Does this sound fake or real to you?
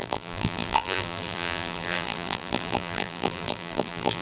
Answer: fake